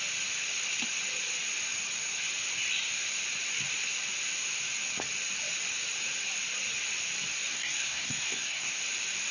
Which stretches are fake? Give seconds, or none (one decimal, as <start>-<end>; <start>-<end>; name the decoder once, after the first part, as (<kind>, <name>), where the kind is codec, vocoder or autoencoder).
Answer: 7.5-8.7 (codec, SNAC)